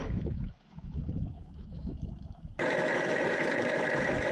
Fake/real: fake